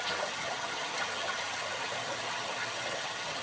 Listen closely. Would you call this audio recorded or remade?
remade